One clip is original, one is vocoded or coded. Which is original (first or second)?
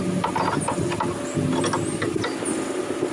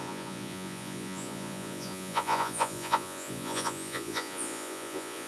first